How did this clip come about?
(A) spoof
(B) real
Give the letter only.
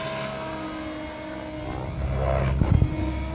B